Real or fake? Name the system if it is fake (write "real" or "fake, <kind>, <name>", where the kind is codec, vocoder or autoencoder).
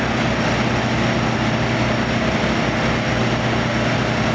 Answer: real